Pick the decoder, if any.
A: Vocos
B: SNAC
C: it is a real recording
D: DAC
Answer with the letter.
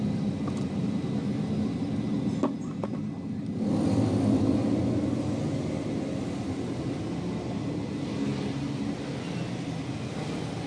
C